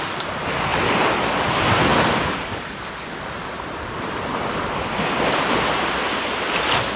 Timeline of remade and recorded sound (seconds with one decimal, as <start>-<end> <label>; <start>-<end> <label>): 0.0-1.9 recorded; 1.9-6.1 remade; 6.1-7.0 recorded